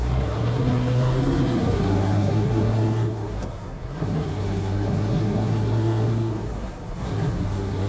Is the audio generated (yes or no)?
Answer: yes